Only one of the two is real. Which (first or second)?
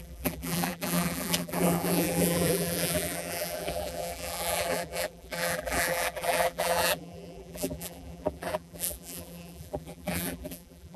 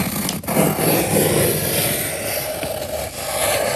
second